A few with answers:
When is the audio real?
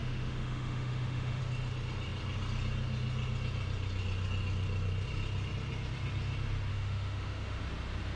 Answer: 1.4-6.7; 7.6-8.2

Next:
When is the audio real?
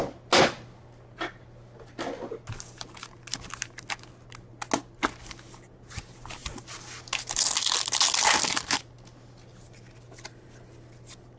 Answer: 0.0-11.4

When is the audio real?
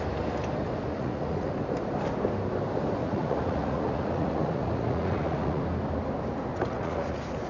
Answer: 0.0-0.9; 1.5-3.0; 5.6-6.5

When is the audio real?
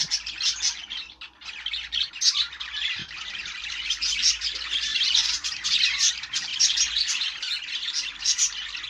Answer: 0.0-3.0; 3.7-4.9; 6.1-6.5; 7.3-8.9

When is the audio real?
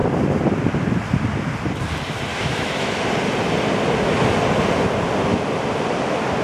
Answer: 0.0-2.3; 3.0-6.4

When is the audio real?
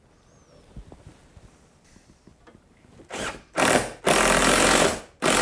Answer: 0.0-2.3; 4.0-4.4; 5.0-5.4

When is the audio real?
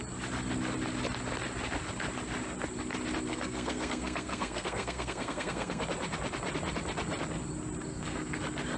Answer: 0.0-3.3; 5.8-7.9; 8.4-8.8